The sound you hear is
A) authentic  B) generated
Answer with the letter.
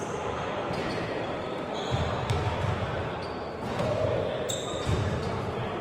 B